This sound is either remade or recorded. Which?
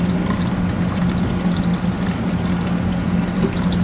recorded